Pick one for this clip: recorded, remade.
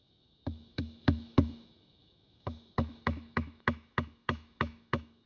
remade